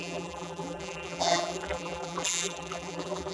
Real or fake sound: fake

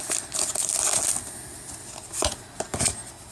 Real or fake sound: real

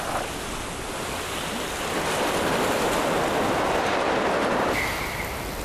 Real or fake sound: real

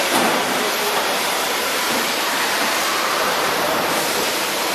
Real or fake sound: fake